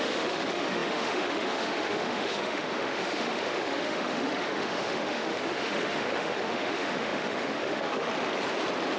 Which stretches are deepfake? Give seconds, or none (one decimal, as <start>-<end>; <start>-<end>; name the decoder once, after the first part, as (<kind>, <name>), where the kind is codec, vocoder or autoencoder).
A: 0.0-8.1 (autoencoder, DAC-VAE)